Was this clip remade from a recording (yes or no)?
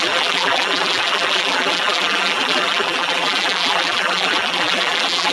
yes